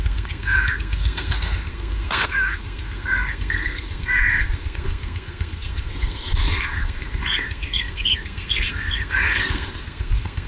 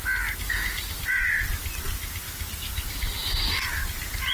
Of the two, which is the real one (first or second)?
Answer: second